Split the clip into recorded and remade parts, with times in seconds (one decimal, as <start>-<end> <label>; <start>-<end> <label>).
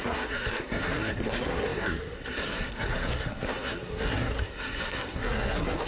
0.0-5.9 remade